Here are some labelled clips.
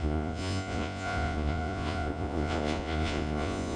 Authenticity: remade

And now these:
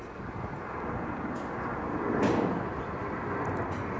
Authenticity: recorded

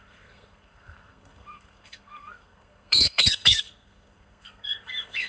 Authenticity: remade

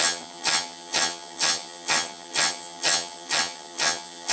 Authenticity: remade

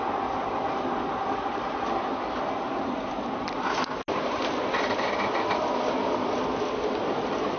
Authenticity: recorded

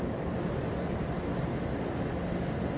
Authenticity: recorded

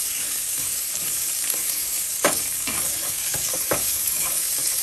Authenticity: remade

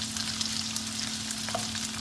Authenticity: recorded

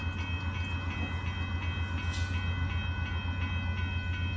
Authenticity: recorded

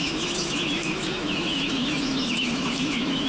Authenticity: remade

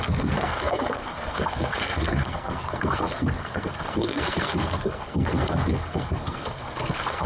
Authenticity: remade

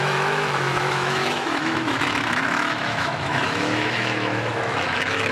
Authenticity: remade